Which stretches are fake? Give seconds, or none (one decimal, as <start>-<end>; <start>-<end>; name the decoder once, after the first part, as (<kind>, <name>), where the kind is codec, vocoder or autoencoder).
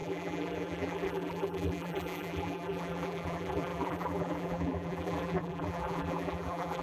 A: 0.0-6.8 (vocoder, BigVGAN v2)